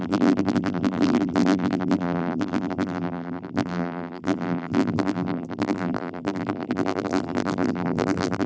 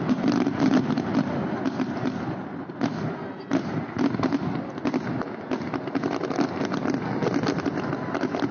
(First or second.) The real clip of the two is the second